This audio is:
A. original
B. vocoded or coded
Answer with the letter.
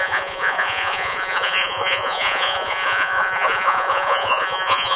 B